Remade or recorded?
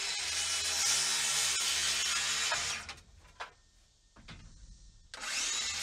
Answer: recorded